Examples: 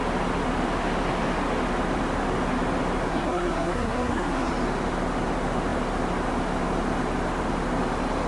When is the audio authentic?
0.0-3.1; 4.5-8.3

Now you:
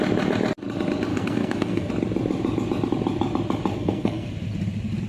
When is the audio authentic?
0.0-1.1; 1.9-3.7; 4.3-5.1

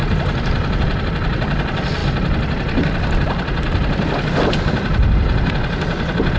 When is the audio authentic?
0.0-6.4

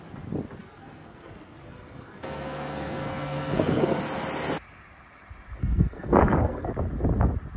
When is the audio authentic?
0.0-0.6; 4.0-5.6; 6.7-7.6